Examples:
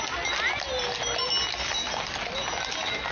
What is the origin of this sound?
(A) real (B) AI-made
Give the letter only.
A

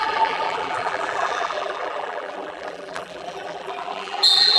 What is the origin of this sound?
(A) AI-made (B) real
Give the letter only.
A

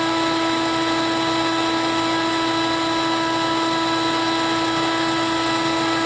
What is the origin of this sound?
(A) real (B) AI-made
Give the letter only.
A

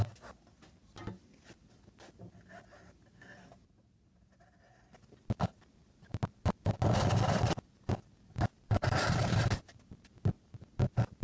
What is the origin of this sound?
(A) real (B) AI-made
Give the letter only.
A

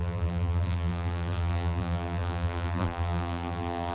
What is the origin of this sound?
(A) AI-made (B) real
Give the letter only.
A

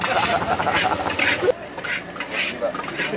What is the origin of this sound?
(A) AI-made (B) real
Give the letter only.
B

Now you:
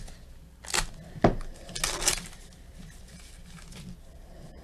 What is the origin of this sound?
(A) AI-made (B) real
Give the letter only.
B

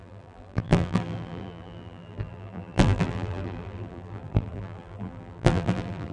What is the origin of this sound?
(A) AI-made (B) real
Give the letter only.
A